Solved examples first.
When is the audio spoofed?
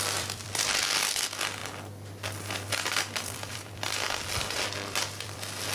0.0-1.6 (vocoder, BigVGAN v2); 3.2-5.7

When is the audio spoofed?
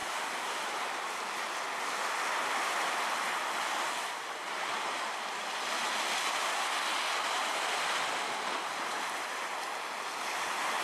7.4-8.1 (vocoder, BigVGAN v2)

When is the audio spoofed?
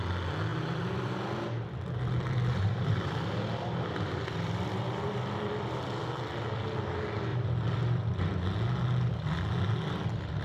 0.5-5.5 (vocoder, BigVGAN v2); 7.3-8.0